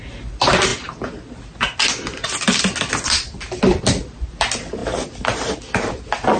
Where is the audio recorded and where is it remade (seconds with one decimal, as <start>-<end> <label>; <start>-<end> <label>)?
0.0-6.4 recorded